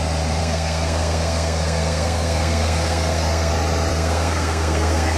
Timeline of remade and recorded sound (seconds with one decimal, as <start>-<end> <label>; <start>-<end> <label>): 0.0-0.4 recorded; 0.4-3.5 remade; 3.5-3.9 recorded; 3.9-5.2 remade